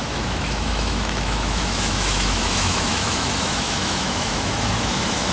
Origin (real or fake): fake